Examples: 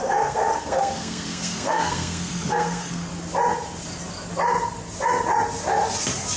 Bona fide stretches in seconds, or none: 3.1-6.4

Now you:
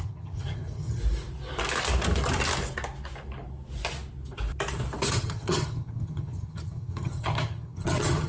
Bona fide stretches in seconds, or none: 1.0-5.1

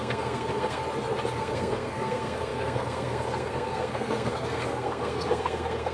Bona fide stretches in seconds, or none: 0.8-1.4

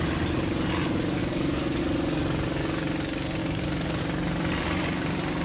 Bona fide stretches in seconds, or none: 0.0-1.2; 1.8-3.4; 4.0-5.4

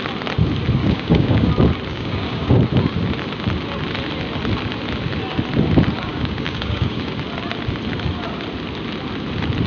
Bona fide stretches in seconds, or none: 0.0-0.8; 1.5-1.9; 2.5-6.1; 7.2-9.7

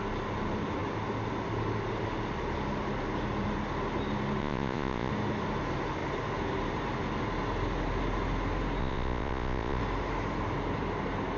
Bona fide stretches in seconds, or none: 0.0-4.4; 5.1-8.8; 9.8-11.4